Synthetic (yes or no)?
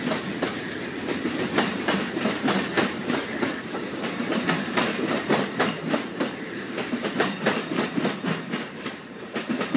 yes